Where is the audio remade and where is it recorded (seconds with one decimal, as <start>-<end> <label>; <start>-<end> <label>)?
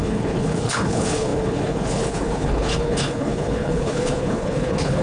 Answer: 0.0-5.0 remade